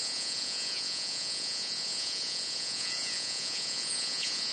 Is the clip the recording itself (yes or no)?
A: no